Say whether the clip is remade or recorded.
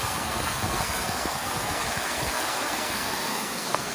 remade